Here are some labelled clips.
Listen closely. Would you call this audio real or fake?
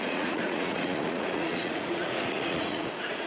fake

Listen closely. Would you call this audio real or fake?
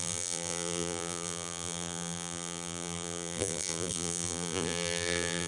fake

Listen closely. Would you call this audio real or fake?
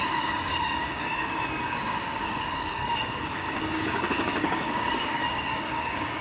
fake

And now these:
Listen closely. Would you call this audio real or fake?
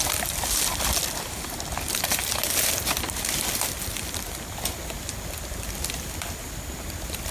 real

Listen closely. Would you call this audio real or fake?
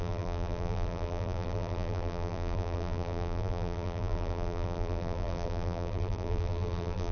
fake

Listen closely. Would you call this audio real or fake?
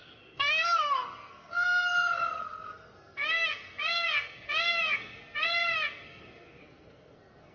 fake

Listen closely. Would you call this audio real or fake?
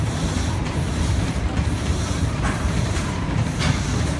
fake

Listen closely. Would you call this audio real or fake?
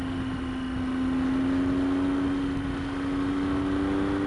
real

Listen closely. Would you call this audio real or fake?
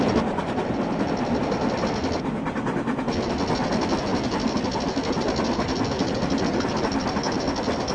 real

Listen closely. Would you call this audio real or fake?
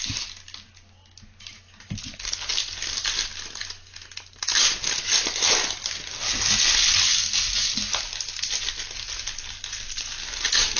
real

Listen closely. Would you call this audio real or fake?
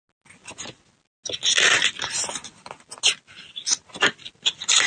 real